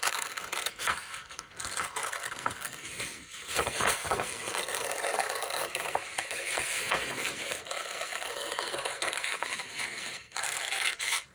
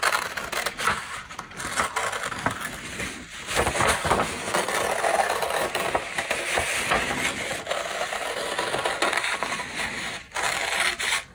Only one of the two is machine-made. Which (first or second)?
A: first